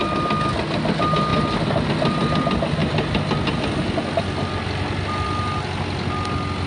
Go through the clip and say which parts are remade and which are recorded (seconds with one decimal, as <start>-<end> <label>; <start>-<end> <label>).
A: 0.0-6.7 recorded